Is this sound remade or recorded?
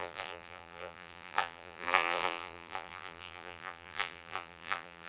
remade